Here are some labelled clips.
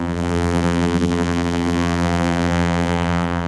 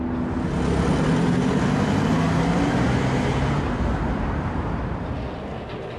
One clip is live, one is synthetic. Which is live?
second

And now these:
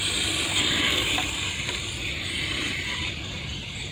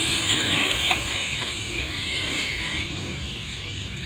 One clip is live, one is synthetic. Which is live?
first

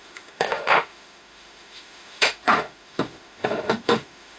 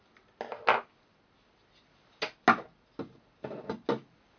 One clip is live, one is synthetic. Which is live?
second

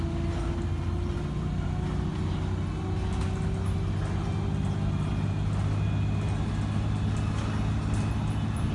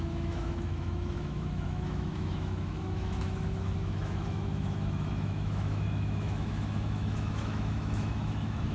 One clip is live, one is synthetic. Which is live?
first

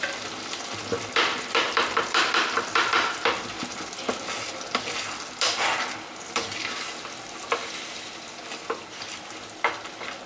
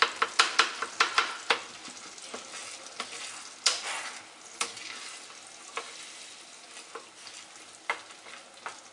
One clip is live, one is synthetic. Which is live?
second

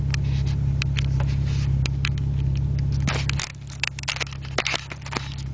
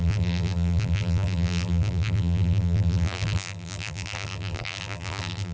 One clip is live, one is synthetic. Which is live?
first